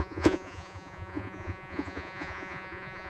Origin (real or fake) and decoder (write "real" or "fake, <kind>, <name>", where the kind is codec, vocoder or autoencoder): fake, vocoder, Vocos